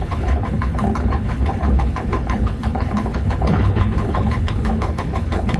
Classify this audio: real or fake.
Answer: fake